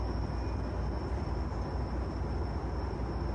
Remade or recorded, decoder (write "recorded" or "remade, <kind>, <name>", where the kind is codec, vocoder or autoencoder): recorded